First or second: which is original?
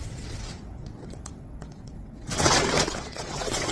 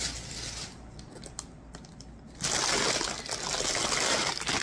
second